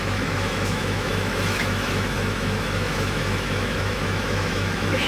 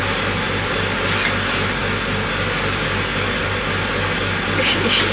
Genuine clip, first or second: second